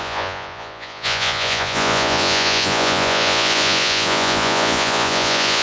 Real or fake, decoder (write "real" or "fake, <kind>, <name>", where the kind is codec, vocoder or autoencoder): fake, vocoder, Vocos